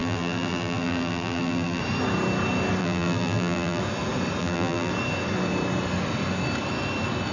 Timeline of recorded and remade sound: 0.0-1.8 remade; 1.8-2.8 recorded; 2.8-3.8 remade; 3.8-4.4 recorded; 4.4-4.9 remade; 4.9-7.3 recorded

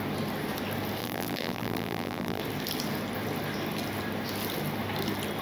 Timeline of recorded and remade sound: 0.0-1.0 recorded; 1.0-2.4 remade; 2.4-5.4 recorded